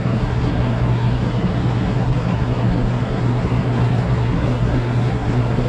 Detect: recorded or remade remade